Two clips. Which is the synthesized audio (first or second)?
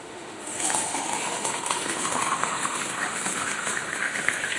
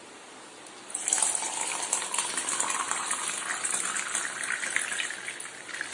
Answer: first